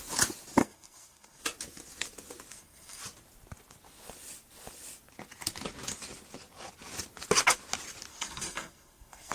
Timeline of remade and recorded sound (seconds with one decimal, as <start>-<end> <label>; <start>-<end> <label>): 0.0-0.6 recorded; 0.6-1.4 remade; 1.4-2.5 recorded; 2.5-3.0 remade; 3.0-8.1 recorded; 8.1-9.3 remade